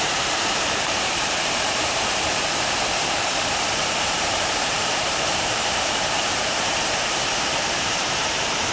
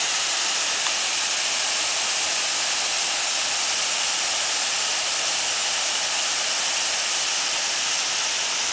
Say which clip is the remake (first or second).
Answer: first